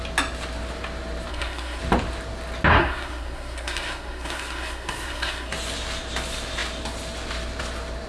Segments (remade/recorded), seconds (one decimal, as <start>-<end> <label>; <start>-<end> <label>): 0.0-1.3 recorded; 1.3-1.8 remade; 1.8-2.7 recorded; 2.7-5.5 remade; 5.5-8.1 recorded

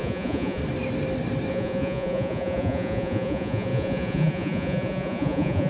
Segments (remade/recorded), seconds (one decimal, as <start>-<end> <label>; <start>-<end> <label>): 0.0-0.6 remade; 0.6-1.5 recorded; 1.5-5.7 remade

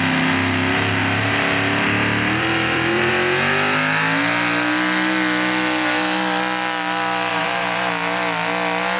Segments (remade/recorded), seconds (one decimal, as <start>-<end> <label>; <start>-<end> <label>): 0.0-1.0 recorded; 1.0-3.1 remade; 3.1-7.3 recorded; 7.3-7.9 remade; 7.9-9.0 recorded

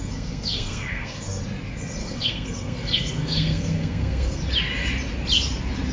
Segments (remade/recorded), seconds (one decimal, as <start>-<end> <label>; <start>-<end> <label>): 0.0-1.4 remade; 1.4-2.0 recorded; 2.0-4.4 remade; 4.4-5.9 recorded

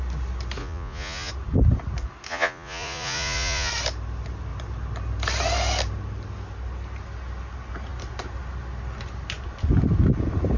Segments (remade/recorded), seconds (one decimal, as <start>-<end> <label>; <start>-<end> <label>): 0.0-0.6 recorded; 0.6-1.3 remade; 1.3-2.3 recorded; 2.3-3.7 remade; 3.7-10.6 recorded

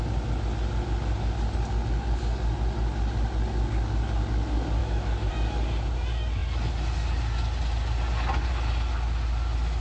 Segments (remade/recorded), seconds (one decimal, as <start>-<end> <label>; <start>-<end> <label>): 0.0-4.8 recorded; 4.8-5.3 remade; 5.3-9.8 recorded

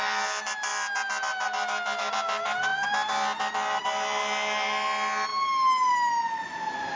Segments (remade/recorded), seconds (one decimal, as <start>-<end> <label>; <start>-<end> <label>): 0.0-7.0 recorded

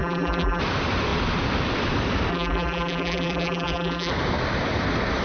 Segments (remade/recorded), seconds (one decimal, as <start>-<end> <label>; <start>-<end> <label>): 0.0-0.6 remade; 0.6-2.3 recorded; 2.3-4.1 remade; 4.1-5.2 recorded